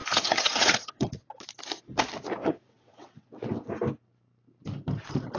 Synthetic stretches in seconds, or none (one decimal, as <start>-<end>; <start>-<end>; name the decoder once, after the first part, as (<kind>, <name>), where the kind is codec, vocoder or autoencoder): 0.0-1.1 (vocoder, WaveNeXt); 2.4-3.7